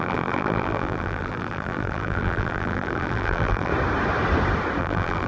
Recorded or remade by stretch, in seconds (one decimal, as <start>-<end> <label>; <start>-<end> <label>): 0.0-3.7 remade; 3.7-4.8 recorded; 4.8-5.3 remade